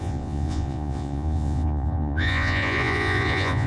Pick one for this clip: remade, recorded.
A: remade